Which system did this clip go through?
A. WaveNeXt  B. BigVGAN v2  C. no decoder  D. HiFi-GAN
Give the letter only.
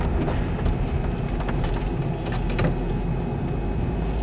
C